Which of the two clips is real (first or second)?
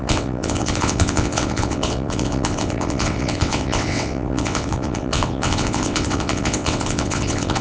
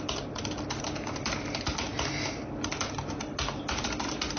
second